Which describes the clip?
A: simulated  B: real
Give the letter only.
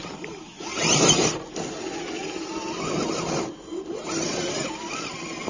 B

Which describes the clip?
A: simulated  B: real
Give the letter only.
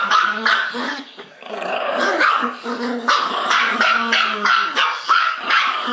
A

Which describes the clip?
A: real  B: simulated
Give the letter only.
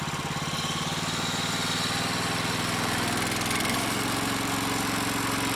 A